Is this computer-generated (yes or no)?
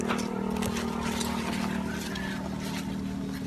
no